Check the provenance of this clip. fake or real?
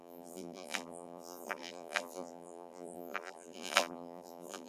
fake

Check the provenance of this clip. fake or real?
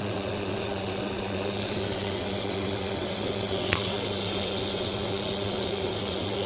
fake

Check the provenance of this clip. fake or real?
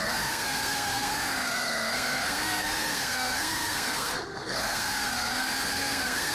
fake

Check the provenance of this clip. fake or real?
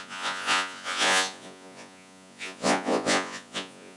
fake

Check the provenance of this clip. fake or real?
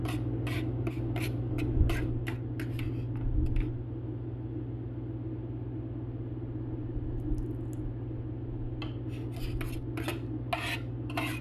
real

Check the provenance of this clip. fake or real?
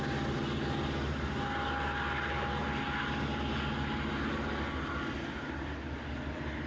real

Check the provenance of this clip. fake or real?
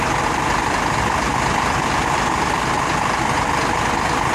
fake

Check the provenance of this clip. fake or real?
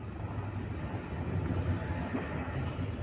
real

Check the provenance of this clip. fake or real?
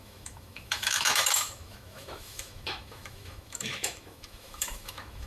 fake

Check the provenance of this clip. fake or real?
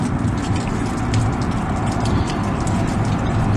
real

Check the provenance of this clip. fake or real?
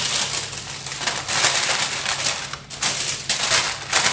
real